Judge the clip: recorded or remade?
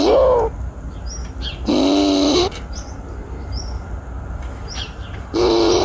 recorded